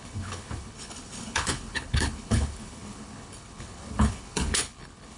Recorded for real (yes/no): no